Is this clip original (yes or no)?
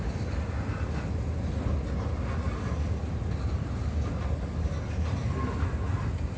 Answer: yes